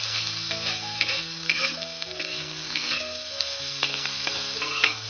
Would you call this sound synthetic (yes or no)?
yes